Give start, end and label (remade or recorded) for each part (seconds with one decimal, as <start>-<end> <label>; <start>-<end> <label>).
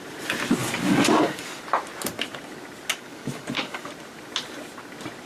0.0-0.6 recorded; 0.6-1.6 remade; 1.6-2.9 recorded; 2.9-3.9 remade; 3.9-5.3 recorded